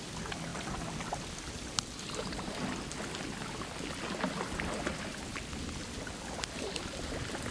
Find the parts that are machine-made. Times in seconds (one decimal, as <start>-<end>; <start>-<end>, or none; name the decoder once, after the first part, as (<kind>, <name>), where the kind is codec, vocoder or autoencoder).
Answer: none